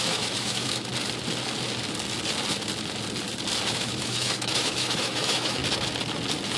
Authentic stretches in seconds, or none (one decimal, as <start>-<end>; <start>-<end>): 0.9-3.7; 5.6-6.6